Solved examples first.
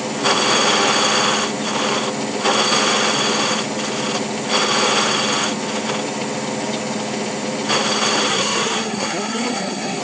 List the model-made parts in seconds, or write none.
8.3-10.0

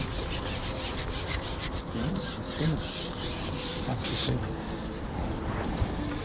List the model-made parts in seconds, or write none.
0.9-4.4